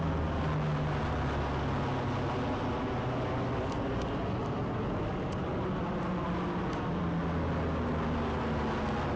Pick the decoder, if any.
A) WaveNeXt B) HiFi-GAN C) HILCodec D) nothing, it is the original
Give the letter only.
D